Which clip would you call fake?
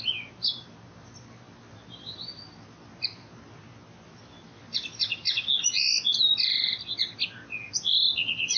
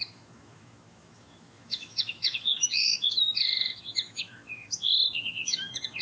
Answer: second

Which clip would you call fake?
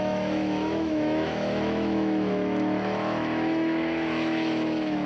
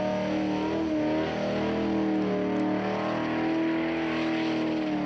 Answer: first